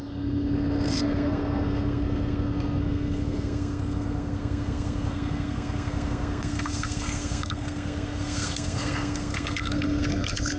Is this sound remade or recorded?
remade